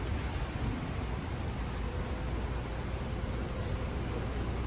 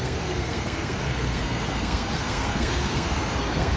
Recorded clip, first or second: first